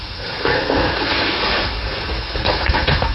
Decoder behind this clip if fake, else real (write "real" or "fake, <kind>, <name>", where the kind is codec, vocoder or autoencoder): fake, codec, SNAC